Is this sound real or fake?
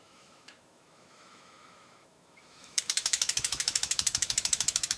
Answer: fake